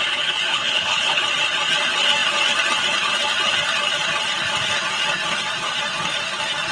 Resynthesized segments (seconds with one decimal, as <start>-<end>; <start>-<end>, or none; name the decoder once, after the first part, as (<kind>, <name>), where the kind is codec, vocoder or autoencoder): 0.5-1.2 (codec, HILCodec)